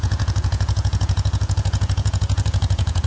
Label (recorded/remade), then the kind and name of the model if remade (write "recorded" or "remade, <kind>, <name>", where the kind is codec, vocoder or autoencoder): remade, vocoder, Vocos